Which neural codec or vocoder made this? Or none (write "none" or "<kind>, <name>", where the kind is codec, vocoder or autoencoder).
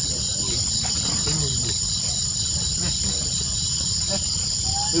none